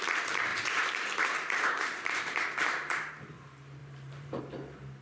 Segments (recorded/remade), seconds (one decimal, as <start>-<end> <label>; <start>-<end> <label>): 0.0-0.5 recorded; 0.5-3.1 remade; 3.1-3.8 recorded; 3.8-4.4 remade; 4.4-5.0 recorded